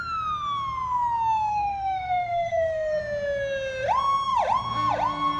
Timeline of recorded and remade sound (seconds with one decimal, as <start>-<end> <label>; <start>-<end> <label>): 0.0-1.5 recorded; 1.5-3.0 remade; 3.0-5.4 recorded